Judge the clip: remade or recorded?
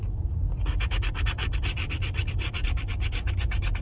recorded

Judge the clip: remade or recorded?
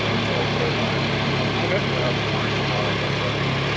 recorded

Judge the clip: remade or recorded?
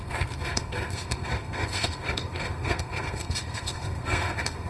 remade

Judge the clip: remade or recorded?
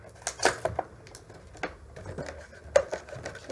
recorded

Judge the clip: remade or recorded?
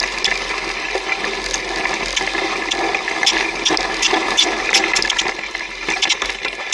recorded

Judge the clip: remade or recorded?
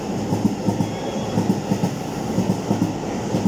recorded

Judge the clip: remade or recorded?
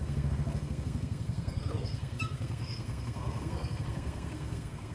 remade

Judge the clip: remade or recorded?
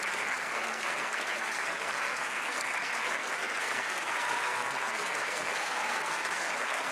remade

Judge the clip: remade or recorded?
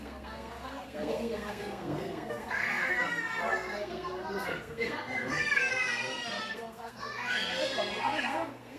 remade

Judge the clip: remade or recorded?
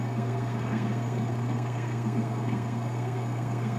remade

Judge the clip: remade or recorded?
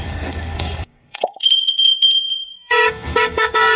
remade